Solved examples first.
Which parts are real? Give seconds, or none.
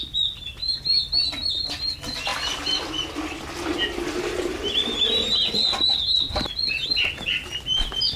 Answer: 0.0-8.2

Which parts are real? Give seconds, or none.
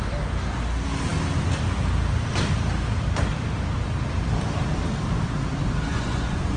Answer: 0.0-5.9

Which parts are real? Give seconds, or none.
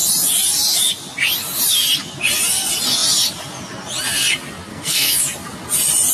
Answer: 0.0-4.7; 5.2-6.1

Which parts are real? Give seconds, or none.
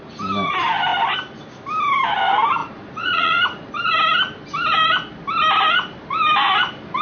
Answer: 0.0-2.6; 3.7-7.0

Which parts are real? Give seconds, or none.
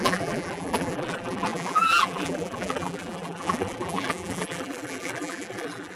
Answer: none